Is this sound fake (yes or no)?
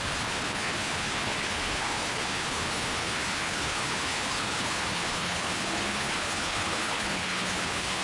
yes